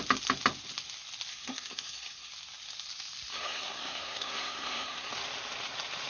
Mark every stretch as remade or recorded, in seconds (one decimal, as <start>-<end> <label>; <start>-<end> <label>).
0.0-1.3 recorded; 1.3-2.3 remade; 2.3-3.3 recorded; 3.3-5.1 remade; 5.1-6.1 recorded